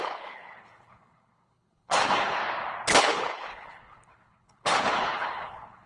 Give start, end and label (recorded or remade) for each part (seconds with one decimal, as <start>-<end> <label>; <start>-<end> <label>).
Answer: 0.0-2.4 remade; 2.4-3.0 recorded; 3.0-5.9 remade